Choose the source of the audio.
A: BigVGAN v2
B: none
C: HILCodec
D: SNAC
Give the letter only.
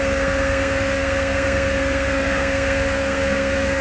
D